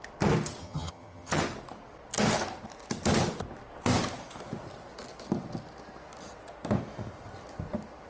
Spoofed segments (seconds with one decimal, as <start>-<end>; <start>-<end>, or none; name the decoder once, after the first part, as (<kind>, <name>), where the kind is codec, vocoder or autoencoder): 0.6-1.4 (vocoder, HiFi-GAN)